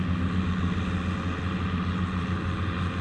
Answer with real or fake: real